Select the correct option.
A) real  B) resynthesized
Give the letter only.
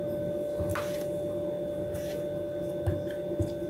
A